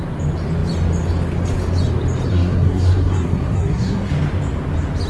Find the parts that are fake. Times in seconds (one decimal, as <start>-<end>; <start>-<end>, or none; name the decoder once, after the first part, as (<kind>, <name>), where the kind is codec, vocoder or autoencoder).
2.3-4.1 (codec, SNAC)